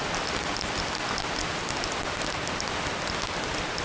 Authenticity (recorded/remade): recorded